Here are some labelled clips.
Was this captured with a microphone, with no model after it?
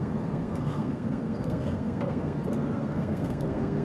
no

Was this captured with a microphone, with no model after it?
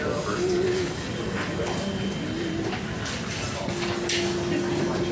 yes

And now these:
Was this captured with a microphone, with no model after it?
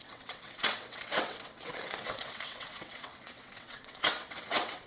no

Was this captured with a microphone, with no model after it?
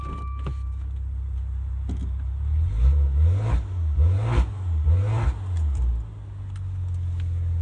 yes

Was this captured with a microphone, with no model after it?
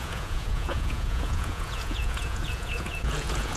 no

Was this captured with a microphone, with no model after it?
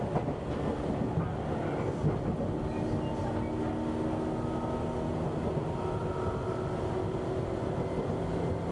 yes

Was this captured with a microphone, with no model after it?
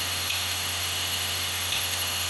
no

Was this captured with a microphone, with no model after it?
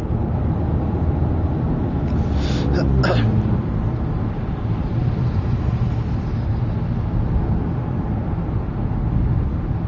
yes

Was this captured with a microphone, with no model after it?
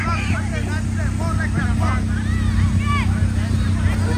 yes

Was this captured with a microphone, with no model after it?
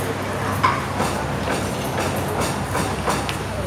yes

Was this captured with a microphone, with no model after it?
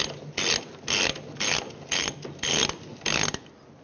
yes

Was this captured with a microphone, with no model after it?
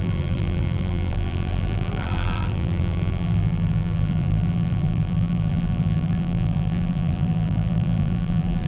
no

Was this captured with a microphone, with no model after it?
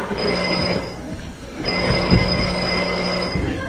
no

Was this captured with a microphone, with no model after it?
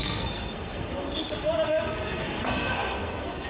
no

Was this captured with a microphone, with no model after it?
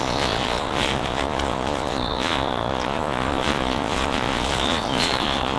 no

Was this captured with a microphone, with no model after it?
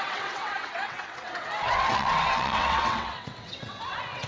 no